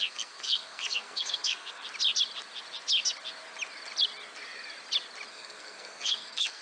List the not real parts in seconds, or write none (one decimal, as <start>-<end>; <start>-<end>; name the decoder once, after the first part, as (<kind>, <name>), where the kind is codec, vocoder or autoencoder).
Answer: 0.0-1.8 (codec, SNAC); 5.3-6.6